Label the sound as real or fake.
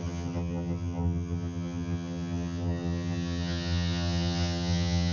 fake